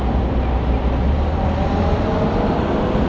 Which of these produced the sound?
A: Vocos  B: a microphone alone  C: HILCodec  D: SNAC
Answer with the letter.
B